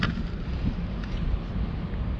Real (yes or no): yes